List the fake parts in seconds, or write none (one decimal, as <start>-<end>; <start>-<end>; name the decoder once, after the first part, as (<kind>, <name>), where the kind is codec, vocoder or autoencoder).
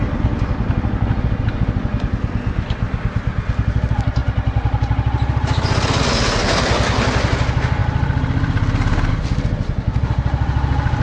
none